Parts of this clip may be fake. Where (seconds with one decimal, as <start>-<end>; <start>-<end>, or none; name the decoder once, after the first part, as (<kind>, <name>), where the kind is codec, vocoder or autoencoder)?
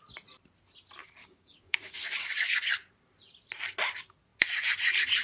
1.2-2.5 (codec, DAC)